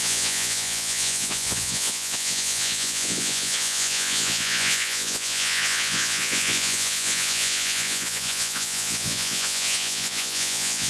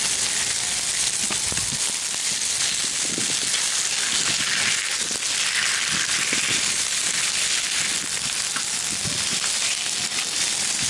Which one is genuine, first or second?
second